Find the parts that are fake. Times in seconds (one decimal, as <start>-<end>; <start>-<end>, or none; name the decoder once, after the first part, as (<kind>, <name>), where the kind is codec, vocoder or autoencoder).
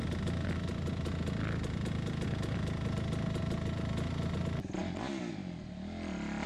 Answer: none